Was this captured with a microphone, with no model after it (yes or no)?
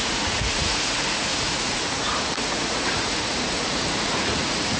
no